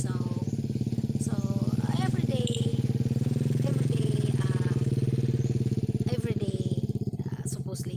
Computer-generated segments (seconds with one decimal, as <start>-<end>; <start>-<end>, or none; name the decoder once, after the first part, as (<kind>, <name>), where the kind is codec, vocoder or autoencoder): none